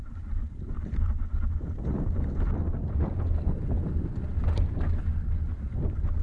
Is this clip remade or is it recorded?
recorded